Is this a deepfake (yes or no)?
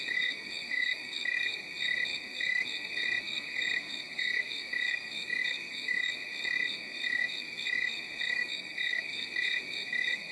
yes